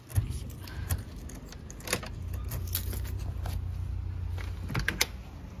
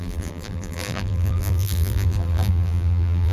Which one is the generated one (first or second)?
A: second